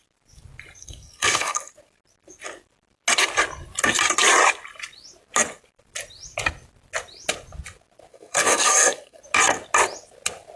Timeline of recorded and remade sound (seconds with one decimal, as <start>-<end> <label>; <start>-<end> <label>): 0.0-0.8 recorded; 0.8-1.7 remade; 1.7-8.1 recorded; 8.1-9.2 remade; 9.2-10.6 recorded